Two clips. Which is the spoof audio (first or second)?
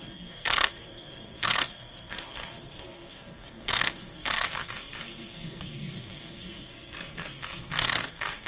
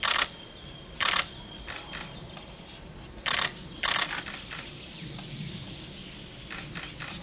first